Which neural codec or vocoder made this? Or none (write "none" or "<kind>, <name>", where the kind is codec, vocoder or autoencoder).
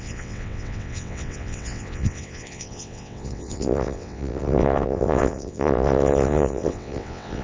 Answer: vocoder, WaveNeXt